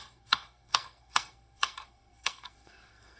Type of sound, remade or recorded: remade